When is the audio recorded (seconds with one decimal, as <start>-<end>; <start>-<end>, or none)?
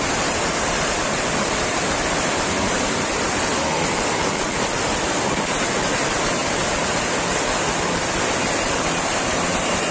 0.0-9.9